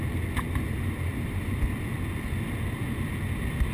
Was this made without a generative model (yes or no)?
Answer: yes